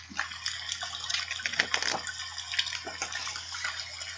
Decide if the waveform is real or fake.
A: real